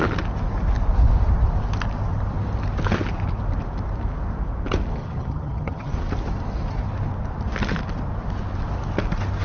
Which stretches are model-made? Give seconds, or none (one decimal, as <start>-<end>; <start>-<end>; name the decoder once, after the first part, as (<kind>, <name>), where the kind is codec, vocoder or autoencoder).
5.0-6.0 (vocoder, HiFi-GAN)